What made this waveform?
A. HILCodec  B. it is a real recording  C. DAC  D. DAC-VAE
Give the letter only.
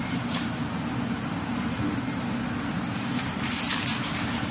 B